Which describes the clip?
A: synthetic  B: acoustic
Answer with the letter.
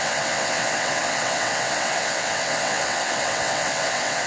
A